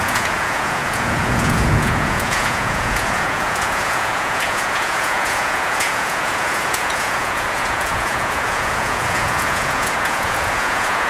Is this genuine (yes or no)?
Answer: no